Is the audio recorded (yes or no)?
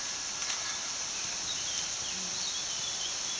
yes